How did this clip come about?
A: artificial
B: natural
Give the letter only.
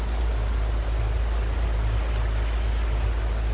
B